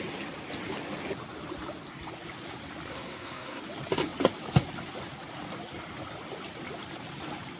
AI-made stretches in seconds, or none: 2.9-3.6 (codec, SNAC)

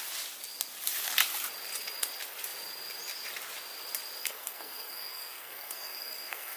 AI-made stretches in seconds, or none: 4.2-6.6 (codec, SNAC)

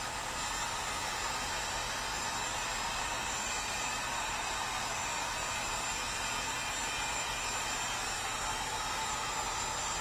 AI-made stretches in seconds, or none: none

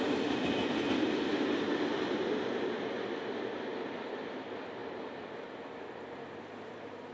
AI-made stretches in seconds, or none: none

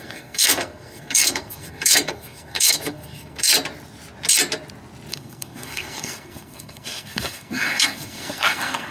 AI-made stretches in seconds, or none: 0.0-3.5 (codec, SNAC); 5.1-8.9

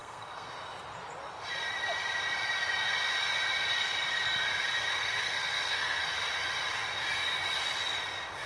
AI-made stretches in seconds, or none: 0.0-0.5 (codec, SNAC); 4.9-6.0

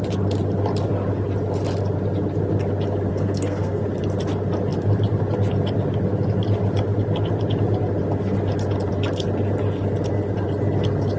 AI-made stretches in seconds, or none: 3.1-3.8 (codec, SNAC)